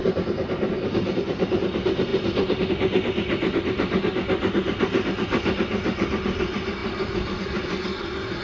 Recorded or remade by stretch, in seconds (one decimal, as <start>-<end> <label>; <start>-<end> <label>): 0.0-1.6 remade; 1.6-8.4 recorded